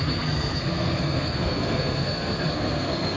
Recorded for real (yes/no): no